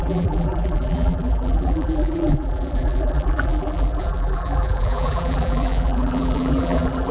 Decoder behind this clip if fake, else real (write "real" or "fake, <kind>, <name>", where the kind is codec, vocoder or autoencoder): fake, vocoder, BigVGAN v2